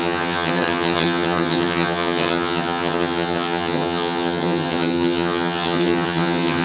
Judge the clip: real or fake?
fake